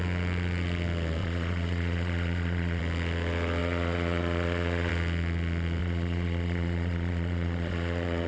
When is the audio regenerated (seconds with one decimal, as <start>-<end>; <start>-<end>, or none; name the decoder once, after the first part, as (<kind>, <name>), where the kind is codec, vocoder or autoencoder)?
1.2-2.8 (vocoder, Vocos); 3.6-4.9; 5.8-8.3